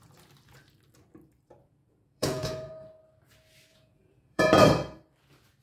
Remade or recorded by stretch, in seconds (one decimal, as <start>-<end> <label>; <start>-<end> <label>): 0.0-1.6 recorded; 1.6-2.7 remade; 2.7-3.7 recorded; 3.7-4.4 remade; 4.4-5.6 recorded